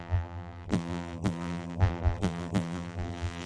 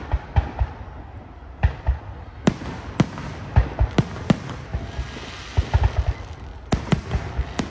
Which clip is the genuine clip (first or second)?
second